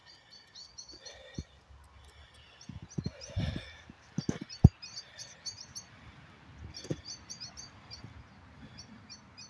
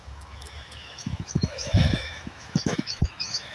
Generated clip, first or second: second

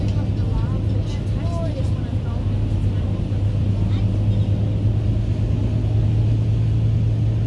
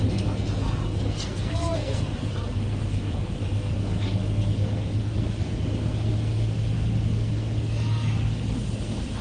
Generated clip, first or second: second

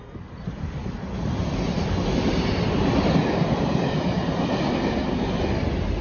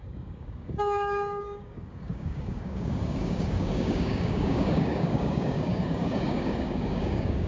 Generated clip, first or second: second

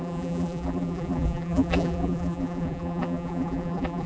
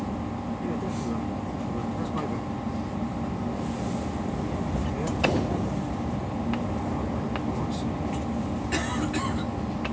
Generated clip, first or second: first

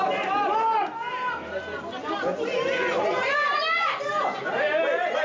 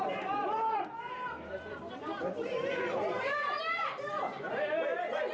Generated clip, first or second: second